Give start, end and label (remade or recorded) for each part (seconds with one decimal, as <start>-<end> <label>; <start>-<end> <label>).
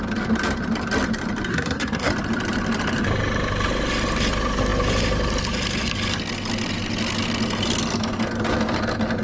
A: 0.0-1.5 recorded; 1.5-2.1 remade; 2.1-9.2 recorded